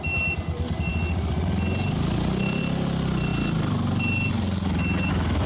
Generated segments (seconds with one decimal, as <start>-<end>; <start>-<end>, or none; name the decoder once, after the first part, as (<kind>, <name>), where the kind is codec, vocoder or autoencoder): none